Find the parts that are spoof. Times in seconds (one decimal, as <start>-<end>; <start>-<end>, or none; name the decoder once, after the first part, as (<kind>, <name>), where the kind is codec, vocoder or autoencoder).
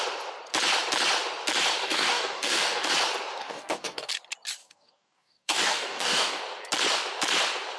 1.8-2.9 (codec, DAC); 3.4-4.1; 4.6-6.4